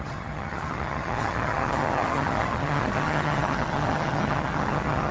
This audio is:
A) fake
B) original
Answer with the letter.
A